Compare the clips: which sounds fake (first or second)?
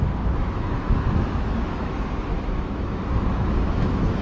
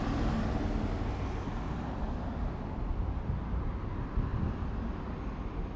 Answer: first